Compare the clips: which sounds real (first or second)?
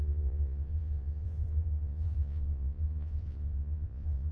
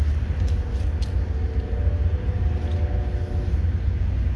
second